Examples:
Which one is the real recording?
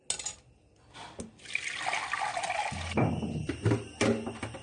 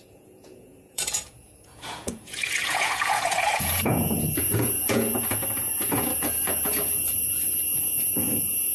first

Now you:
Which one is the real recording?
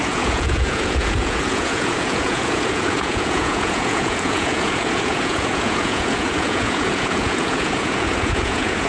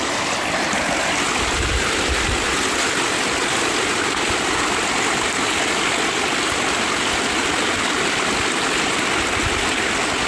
second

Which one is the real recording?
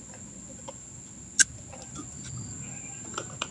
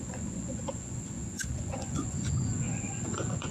first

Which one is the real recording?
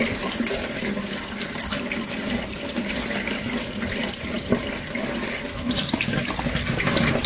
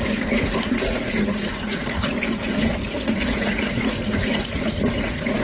first